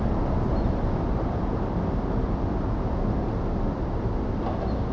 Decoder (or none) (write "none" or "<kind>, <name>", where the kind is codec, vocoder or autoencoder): none